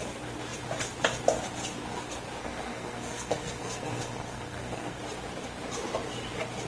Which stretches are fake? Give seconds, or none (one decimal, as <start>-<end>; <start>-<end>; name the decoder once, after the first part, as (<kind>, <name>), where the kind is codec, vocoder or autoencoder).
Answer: 2.4-5.0 (codec, SNAC)

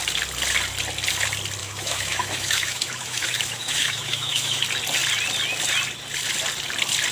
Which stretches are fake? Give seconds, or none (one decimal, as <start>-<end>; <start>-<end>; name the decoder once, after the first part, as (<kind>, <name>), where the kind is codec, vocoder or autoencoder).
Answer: 1.6-4.6 (autoencoder, DAC-VAE)